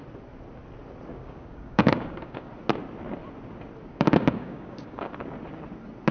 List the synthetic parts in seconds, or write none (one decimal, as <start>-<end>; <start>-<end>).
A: 1.1-2.5; 3.9-5.1